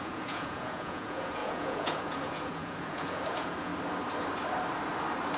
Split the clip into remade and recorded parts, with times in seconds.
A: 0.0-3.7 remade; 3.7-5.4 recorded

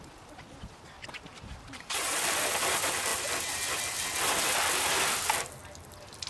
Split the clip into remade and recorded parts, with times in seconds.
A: 0.0-3.1 remade; 3.1-4.3 recorded; 4.3-6.3 remade

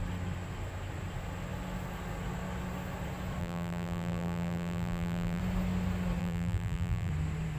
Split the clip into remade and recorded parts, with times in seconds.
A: 0.0-3.4 recorded; 3.4-5.4 remade; 5.4-6.2 recorded; 6.2-7.1 remade; 7.1-7.6 recorded

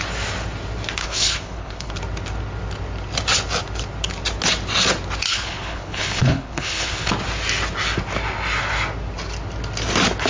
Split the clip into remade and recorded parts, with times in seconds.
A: 0.0-1.0 recorded; 1.0-1.9 remade; 1.9-5.3 recorded; 5.3-7.1 remade; 7.1-10.3 recorded

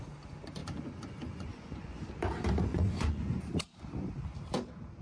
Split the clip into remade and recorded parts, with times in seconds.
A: 0.0-0.6 recorded; 0.6-2.1 remade; 2.1-2.7 recorded; 2.7-3.4 remade; 3.4-5.0 recorded

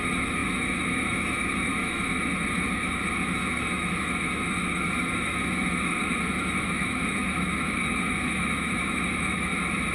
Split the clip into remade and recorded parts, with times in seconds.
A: 0.0-9.9 remade

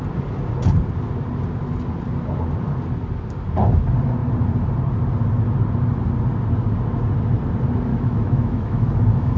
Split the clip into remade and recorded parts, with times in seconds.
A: 0.0-7.9 recorded; 7.9-9.4 remade

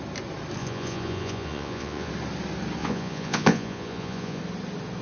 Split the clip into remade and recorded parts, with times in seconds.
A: 0.0-0.6 recorded; 0.6-2.1 remade; 2.1-2.8 recorded; 2.8-4.4 remade; 4.4-5.0 recorded